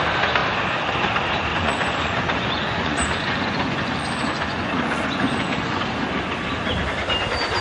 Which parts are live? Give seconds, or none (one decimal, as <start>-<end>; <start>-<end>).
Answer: 0.0-1.5; 5.8-7.6